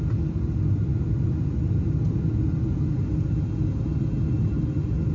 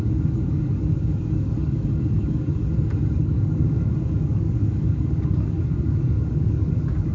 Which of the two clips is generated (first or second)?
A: second